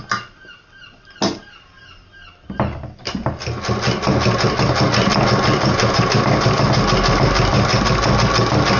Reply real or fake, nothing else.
real